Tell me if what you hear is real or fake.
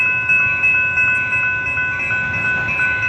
real